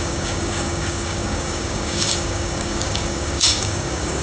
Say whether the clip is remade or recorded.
remade